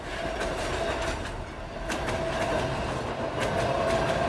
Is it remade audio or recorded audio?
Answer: recorded